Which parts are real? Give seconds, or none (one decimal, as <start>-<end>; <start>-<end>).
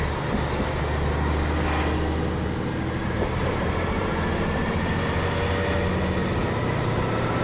0.0-3.0; 4.9-6.2